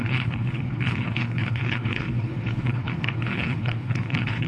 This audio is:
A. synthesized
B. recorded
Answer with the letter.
A